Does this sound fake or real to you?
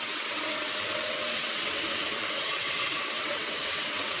fake